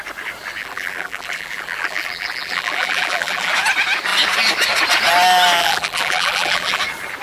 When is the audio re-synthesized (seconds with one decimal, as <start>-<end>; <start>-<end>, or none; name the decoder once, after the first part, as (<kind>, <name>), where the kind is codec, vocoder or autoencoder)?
0.6-3.5 (vocoder, BigVGAN v2); 5.6-6.8